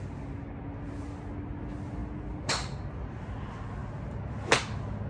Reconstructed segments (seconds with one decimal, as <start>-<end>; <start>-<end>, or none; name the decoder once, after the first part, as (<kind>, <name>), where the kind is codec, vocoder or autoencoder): none